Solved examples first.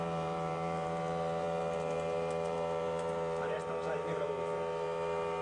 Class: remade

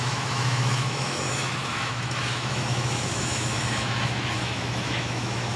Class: remade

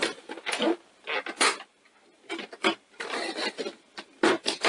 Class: recorded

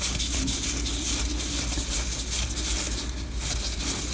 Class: recorded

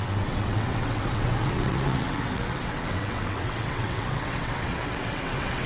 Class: remade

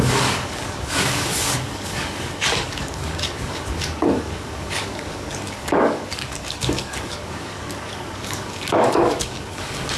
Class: remade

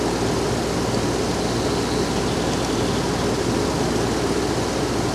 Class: recorded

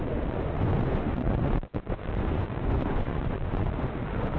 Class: remade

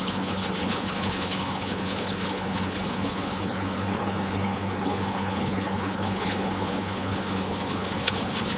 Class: remade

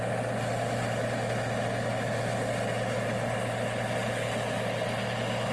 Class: recorded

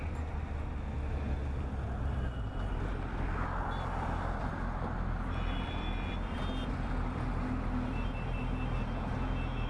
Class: recorded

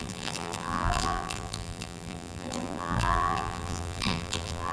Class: remade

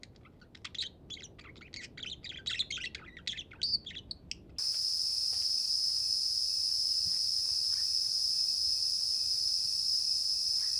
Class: recorded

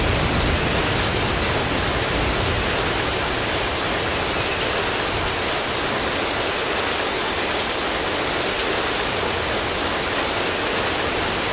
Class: recorded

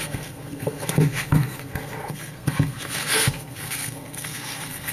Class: remade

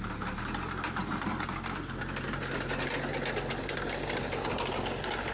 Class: recorded